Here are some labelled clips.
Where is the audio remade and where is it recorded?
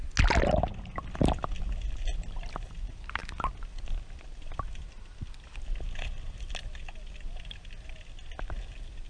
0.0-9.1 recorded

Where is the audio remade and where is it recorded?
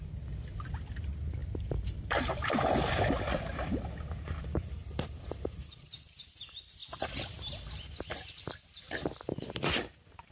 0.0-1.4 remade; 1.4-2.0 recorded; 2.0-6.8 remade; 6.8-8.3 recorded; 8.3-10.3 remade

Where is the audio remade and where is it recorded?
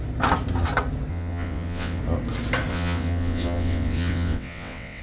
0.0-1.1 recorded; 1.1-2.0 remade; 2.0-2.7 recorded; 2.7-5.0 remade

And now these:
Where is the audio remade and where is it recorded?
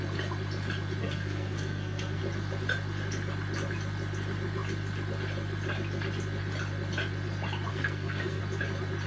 0.0-1.0 recorded; 1.0-2.2 remade; 2.2-7.7 recorded; 7.7-8.4 remade; 8.4-9.1 recorded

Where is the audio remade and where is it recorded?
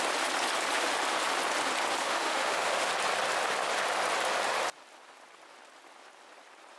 0.0-2.0 recorded; 2.0-2.9 remade; 2.9-6.8 recorded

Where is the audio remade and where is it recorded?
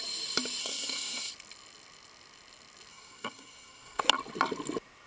0.0-0.6 recorded; 0.6-1.3 remade; 1.3-2.9 recorded; 2.9-4.0 remade; 4.0-5.1 recorded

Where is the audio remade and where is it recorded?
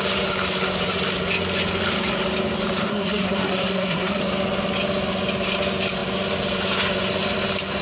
0.0-2.9 recorded; 2.9-4.2 remade; 4.2-7.8 recorded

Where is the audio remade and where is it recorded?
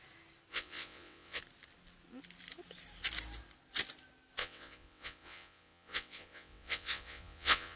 0.0-0.5 recorded; 0.5-1.4 remade; 1.4-4.4 recorded; 4.4-7.8 remade